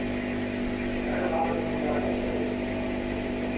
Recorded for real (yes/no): yes